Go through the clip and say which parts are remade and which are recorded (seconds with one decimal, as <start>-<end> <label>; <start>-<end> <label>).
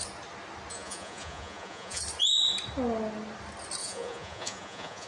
0.0-0.7 recorded; 0.7-2.0 remade; 2.0-3.8 recorded; 3.8-5.1 remade